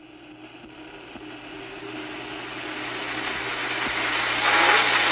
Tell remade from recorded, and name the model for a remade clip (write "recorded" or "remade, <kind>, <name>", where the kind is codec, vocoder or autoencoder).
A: recorded